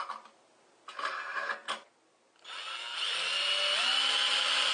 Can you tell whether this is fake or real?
real